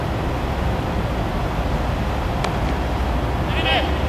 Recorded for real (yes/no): yes